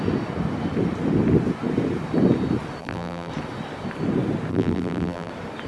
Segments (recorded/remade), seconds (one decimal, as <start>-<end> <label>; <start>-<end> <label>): 0.0-2.8 recorded; 2.8-3.3 remade; 3.3-4.5 recorded; 4.5-5.3 remade; 5.3-5.7 recorded